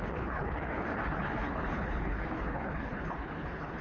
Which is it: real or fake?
fake